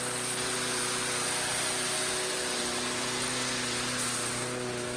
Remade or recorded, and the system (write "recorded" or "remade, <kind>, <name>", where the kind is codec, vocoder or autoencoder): recorded